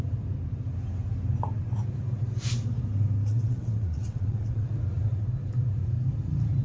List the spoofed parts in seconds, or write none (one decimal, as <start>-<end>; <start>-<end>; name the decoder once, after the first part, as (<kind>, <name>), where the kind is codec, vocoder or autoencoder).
3.3-4.7 (vocoder, WaveNeXt)